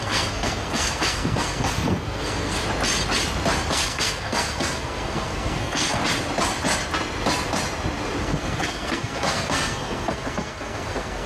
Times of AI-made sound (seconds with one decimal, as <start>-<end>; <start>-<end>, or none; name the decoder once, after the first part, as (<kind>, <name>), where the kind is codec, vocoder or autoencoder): 0.0-2.6 (codec, SNAC); 3.7-6.0; 8.2-11.3